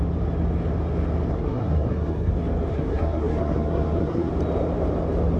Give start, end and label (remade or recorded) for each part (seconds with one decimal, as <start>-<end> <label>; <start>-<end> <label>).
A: 0.0-1.3 recorded; 1.3-2.3 remade; 2.3-2.7 recorded; 2.7-4.3 remade; 4.3-5.4 recorded